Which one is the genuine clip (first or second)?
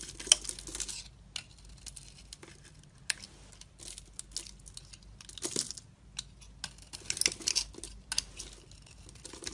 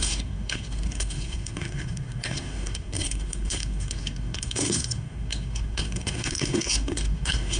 first